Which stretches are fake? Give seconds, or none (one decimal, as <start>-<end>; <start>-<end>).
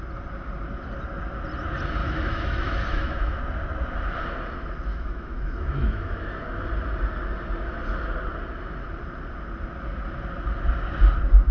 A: 2.0-3.4; 4.9-6.3